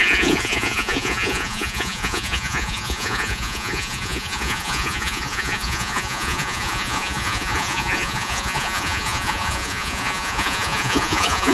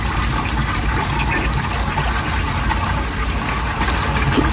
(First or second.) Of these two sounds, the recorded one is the second